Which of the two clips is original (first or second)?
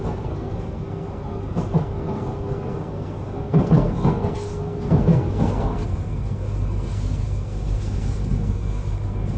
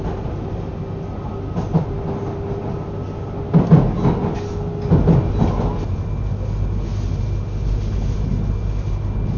second